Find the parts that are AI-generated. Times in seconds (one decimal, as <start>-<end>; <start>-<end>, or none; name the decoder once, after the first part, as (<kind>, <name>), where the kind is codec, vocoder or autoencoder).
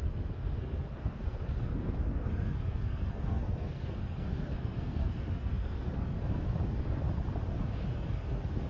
0.0-7.0 (codec, SNAC); 7.5-8.7